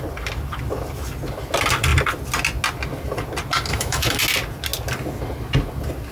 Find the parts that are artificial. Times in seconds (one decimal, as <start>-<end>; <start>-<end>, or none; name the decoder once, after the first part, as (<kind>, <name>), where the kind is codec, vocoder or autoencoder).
3.7-4.2 (autoencoder, DAC-VAE)

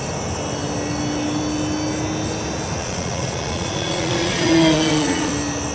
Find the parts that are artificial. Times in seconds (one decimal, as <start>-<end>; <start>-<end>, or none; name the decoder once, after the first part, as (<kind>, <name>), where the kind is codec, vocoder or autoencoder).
2.8-5.3 (vocoder, Vocos)

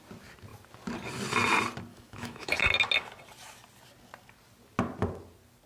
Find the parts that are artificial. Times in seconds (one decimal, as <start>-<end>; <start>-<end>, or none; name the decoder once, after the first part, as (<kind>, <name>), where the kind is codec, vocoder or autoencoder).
1.9-2.6 (autoencoder, DAC-VAE)